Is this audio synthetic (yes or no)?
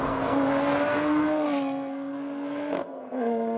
yes